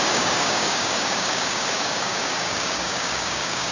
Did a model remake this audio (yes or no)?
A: yes